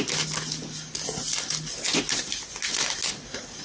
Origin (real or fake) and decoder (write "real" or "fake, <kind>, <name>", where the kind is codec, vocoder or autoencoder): real